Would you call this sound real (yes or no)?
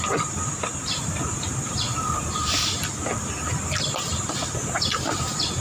yes